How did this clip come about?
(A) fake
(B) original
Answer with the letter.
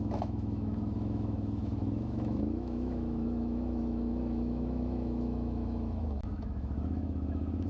A